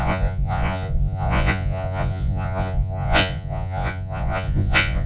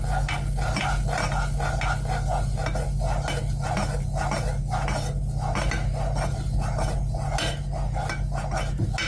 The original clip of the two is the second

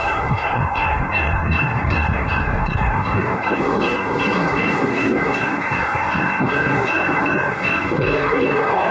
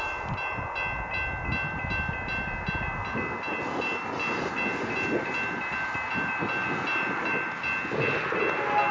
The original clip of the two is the second